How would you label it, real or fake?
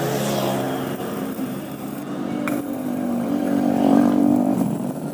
fake